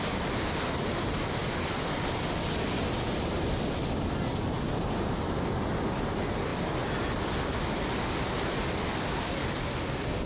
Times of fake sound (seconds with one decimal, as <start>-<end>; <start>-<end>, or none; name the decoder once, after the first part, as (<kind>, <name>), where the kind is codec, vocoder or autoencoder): none